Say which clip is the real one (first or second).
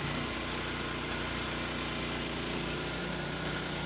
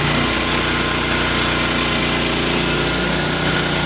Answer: second